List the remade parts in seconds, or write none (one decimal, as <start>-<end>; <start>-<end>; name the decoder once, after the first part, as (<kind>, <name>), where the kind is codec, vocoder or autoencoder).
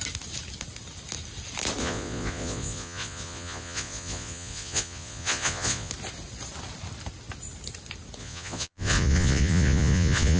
1.8-5.9 (vocoder, Vocos); 8.2-10.4